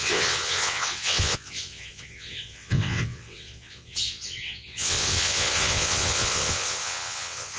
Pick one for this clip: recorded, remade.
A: remade